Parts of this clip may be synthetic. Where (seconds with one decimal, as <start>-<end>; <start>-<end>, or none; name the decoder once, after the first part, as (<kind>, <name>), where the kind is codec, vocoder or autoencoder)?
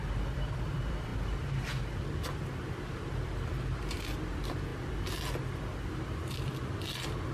0.0-4.7 (vocoder, BigVGAN v2)